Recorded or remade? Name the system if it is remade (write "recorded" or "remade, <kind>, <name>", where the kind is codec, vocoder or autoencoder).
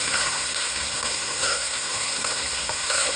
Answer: remade, codec, SNAC